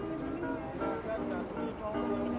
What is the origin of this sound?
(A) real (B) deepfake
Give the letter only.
A